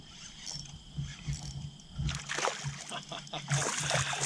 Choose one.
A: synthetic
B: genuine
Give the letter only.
B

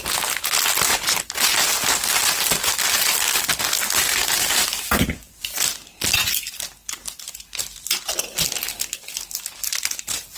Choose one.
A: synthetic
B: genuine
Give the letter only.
B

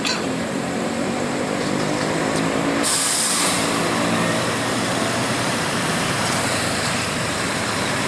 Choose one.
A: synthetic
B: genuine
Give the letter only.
A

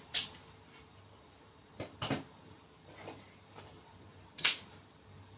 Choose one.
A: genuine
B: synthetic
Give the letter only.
B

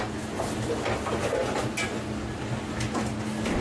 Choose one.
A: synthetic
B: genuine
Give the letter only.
B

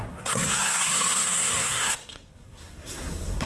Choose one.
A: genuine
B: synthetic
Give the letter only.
B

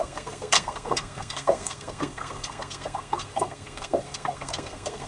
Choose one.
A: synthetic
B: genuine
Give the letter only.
A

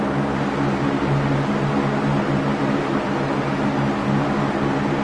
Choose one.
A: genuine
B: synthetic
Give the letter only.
A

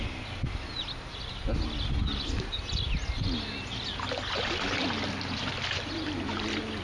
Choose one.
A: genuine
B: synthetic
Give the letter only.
A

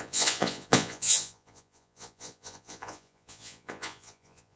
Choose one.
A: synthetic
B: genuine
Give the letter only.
A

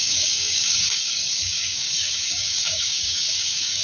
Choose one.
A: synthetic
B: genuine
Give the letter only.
A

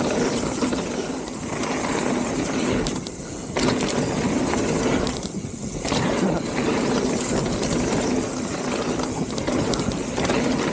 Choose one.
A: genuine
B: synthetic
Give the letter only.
A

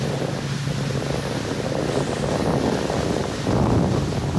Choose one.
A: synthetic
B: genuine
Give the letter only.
B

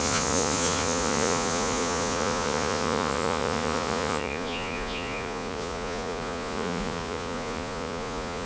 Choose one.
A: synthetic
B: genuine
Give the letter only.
A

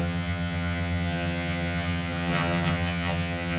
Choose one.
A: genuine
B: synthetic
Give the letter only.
B